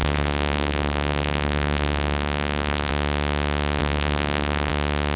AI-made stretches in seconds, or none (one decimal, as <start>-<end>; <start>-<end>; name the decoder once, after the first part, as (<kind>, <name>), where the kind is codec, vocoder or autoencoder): 0.0-2.9 (codec, SNAC); 3.8-4.7